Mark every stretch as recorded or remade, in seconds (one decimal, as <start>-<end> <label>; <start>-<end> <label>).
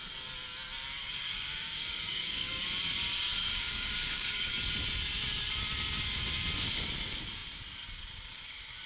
0.0-1.0 recorded; 1.0-2.6 remade; 2.6-3.4 recorded; 3.4-4.5 remade; 4.5-8.9 recorded